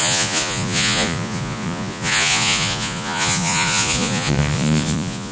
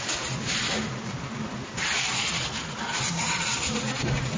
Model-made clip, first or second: first